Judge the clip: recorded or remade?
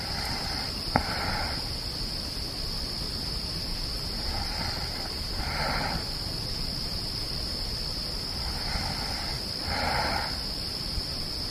recorded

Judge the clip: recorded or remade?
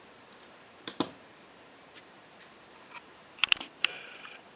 remade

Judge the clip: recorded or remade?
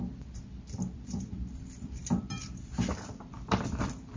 remade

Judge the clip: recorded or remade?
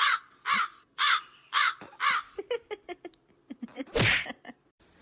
remade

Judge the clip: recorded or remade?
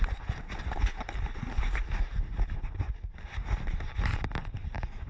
remade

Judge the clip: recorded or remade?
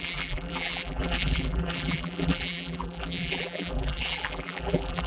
remade